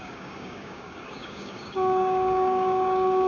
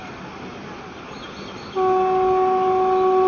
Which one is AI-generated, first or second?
first